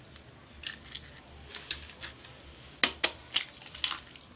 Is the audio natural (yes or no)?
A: yes